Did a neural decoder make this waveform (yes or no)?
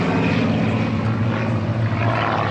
no